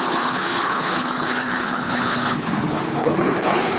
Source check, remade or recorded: remade